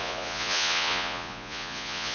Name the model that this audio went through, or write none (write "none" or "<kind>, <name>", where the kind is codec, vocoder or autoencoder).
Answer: vocoder, Vocos